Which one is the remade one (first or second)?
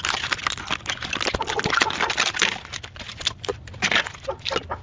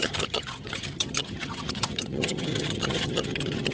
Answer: second